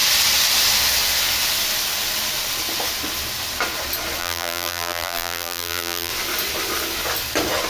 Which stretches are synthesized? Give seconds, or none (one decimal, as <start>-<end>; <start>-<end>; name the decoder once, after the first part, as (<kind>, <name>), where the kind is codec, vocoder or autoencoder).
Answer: 4.2-6.1 (vocoder, BigVGAN v2)